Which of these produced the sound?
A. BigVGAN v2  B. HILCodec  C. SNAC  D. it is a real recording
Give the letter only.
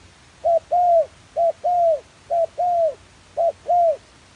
D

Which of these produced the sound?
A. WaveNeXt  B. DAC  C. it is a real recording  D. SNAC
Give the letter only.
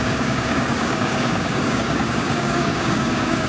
B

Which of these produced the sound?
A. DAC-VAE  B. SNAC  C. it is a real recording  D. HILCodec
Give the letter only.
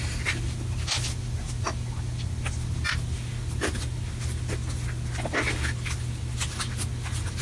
C